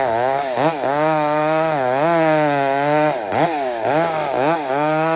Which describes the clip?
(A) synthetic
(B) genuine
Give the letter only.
A